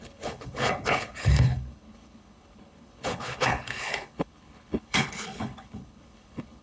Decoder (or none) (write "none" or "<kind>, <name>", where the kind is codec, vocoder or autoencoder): codec, HILCodec